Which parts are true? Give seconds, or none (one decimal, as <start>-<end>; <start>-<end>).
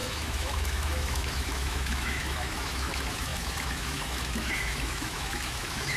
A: none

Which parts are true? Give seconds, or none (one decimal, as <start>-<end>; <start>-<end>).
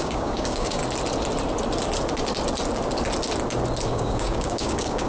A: 0.8-3.9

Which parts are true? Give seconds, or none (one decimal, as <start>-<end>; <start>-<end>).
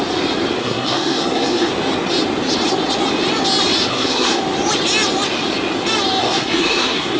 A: 0.0-0.6; 1.7-3.9; 4.4-6.2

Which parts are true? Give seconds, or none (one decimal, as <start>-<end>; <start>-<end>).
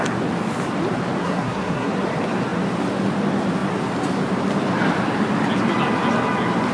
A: 0.0-1.2; 1.9-6.7